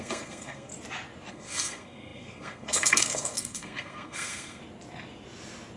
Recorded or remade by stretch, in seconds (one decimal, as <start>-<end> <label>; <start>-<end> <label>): 0.0-0.7 remade; 0.7-1.3 recorded; 1.3-4.6 remade; 4.6-5.8 recorded